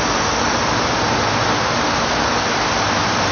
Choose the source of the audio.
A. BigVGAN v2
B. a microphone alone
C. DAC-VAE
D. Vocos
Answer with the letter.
B